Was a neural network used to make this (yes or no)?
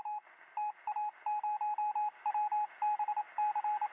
no